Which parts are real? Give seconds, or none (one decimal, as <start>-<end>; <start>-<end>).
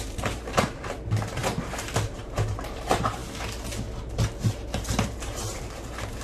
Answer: 1.4-2.0; 3.2-4.5